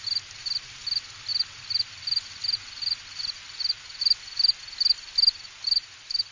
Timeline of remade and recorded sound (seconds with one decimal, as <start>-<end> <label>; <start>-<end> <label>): 0.0-6.3 recorded